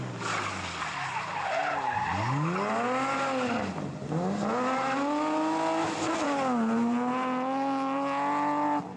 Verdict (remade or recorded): recorded